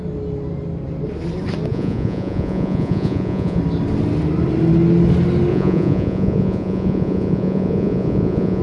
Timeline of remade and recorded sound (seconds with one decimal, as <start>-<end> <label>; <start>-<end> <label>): 0.0-1.7 recorded; 1.7-3.6 remade; 3.6-5.5 recorded; 5.5-8.6 remade